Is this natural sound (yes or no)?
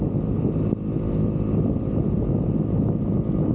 yes